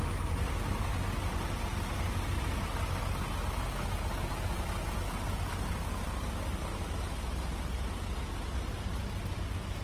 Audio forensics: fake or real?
real